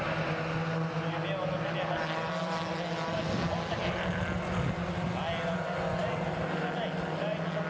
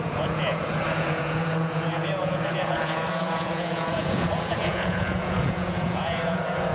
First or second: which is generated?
second